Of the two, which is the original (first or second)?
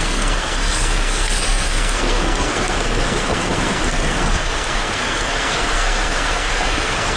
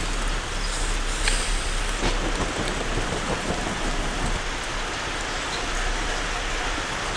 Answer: second